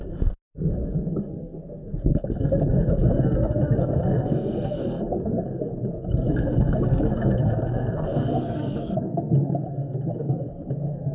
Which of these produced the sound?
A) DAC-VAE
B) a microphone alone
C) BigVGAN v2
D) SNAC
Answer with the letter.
D